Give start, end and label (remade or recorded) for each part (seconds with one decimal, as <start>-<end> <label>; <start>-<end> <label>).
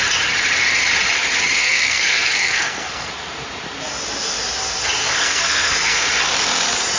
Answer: 0.0-1.6 recorded; 1.6-3.1 remade; 3.1-5.0 recorded; 5.0-6.1 remade; 6.1-7.0 recorded